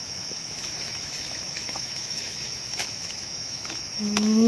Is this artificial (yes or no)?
yes